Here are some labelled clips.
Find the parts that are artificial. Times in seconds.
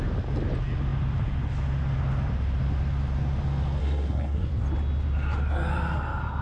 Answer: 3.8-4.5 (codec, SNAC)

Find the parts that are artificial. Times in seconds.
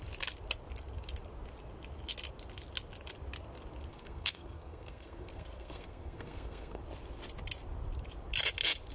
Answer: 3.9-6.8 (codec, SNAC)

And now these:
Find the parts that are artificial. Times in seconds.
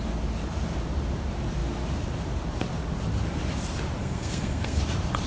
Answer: 4.0-4.8 (codec, SNAC)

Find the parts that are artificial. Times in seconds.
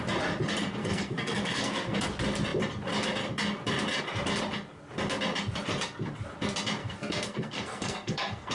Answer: 0.8-2.0 (codec, SNAC); 6.8-8.5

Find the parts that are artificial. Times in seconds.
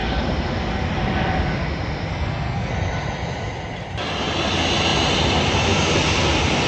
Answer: 2.1-2.7 (codec, SNAC)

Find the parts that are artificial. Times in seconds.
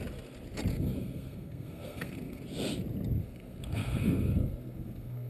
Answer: 0.7-2.4 (codec, SNAC); 3.2-5.3